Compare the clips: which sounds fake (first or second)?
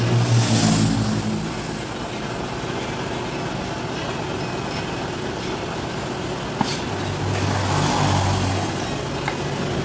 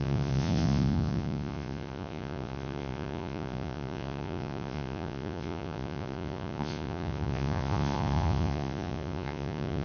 second